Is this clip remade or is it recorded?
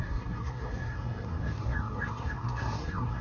remade